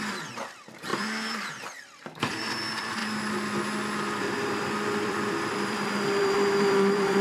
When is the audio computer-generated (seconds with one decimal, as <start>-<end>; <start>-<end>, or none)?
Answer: 0.0-3.0; 4.2-7.2